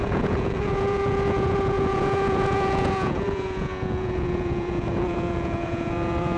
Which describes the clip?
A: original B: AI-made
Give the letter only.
B